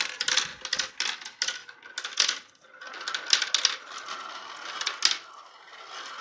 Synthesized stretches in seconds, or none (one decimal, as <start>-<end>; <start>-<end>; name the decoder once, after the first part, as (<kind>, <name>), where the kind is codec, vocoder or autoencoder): none

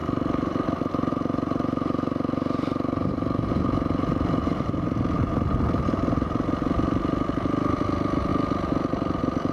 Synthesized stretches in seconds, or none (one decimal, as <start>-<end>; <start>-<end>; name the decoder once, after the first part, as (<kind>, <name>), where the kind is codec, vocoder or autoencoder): none

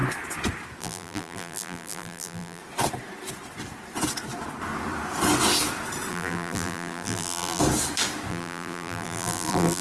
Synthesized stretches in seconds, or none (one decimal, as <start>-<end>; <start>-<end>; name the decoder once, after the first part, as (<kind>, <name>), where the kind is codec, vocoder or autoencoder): 0.8-2.6 (vocoder, BigVGAN v2); 6.1-7.6; 8.3-9.8

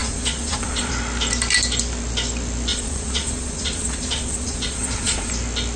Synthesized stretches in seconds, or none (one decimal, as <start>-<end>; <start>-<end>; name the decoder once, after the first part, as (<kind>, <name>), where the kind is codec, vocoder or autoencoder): 0.0-0.9 (vocoder, Vocos); 2.7-5.3

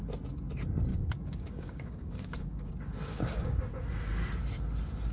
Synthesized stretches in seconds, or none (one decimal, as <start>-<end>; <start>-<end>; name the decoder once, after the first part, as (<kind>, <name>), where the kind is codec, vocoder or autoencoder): 0.9-2.7 (codec, DAC); 3.1-3.7

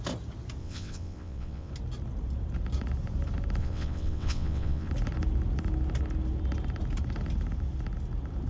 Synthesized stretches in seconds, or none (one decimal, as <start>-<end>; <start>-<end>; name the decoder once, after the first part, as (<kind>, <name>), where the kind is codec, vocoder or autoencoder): 0.6-1.7 (vocoder, WaveNeXt); 3.6-4.9